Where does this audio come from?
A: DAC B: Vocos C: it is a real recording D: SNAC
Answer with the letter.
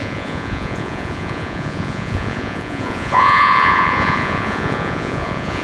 B